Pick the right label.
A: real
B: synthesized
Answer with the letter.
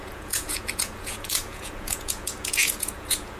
B